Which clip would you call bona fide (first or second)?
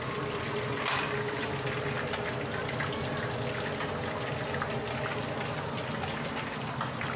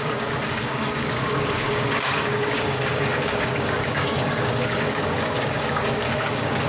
first